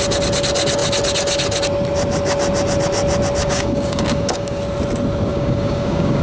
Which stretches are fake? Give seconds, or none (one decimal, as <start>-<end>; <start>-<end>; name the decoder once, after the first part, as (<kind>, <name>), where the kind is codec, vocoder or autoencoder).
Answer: 3.4-4.6 (codec, DAC); 5.3-6.2